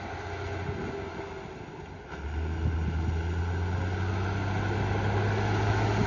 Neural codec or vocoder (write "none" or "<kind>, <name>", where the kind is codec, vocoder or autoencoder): none